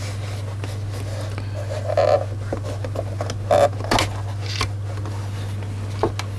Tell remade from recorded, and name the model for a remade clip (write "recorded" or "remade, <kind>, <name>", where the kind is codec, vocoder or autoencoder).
recorded